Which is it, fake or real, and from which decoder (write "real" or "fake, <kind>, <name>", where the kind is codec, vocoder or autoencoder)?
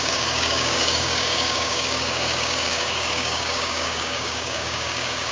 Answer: fake, codec, DAC